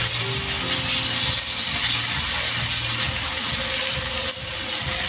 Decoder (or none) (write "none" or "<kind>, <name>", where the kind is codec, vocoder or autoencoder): none